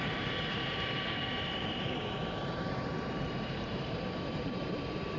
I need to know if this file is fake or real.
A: fake